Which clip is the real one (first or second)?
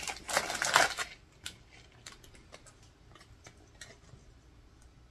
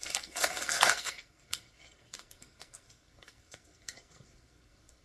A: first